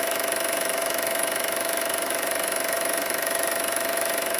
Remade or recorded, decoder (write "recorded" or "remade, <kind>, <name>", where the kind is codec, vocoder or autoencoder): remade, autoencoder, DAC-VAE